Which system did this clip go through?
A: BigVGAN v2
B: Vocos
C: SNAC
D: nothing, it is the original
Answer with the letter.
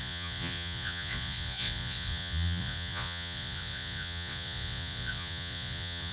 B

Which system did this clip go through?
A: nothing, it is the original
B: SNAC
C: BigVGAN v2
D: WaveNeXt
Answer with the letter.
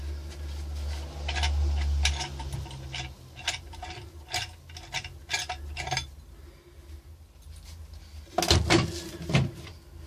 A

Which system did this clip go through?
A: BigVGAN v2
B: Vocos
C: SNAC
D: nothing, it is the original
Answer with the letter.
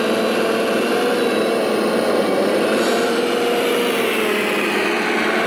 D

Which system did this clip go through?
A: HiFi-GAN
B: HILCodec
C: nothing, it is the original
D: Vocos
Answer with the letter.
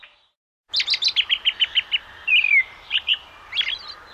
C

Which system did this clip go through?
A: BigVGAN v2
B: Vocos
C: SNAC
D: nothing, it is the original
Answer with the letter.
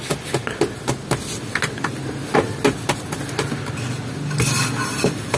D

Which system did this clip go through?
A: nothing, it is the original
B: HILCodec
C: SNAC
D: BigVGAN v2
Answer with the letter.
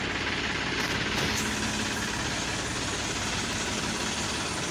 A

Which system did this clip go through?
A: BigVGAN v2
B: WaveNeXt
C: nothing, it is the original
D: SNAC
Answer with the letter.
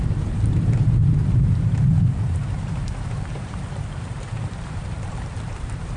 A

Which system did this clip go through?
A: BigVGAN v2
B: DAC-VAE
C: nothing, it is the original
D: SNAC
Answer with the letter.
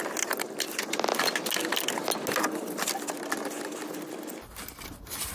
C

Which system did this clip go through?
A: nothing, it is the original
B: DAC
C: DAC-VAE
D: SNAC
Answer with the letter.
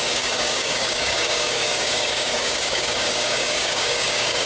B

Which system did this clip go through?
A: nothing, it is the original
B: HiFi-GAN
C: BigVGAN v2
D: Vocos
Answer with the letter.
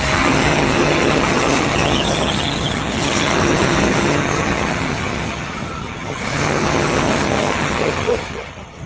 B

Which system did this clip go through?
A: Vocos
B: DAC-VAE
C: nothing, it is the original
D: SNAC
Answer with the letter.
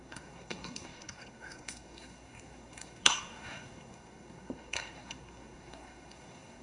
D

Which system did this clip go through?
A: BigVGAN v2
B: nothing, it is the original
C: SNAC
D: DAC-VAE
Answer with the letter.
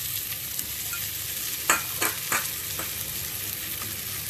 B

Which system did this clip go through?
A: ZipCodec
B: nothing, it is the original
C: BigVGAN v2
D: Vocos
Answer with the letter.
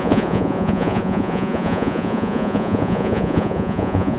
D